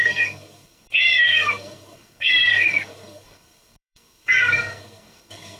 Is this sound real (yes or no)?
no